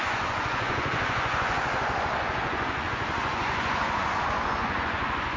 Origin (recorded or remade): remade